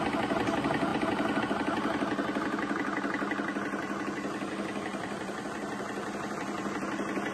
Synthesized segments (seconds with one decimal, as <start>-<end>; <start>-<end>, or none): 4.9-6.8